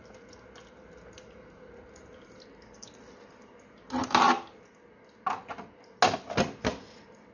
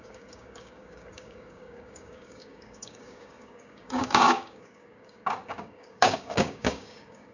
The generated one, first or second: second